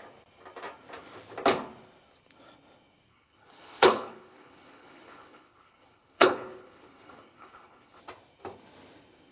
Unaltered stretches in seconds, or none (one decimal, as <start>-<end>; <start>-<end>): 0.0-3.1; 8.0-9.3